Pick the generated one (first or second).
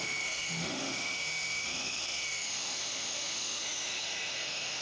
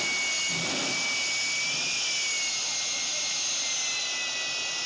first